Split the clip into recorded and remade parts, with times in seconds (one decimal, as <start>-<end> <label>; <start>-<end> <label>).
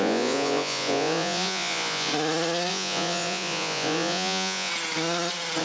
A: 0.0-2.1 remade; 2.1-2.7 recorded; 2.7-4.7 remade; 4.7-5.6 recorded